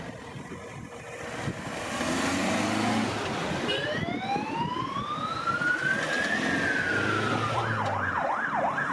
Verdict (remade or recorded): recorded